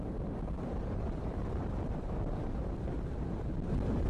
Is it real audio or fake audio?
fake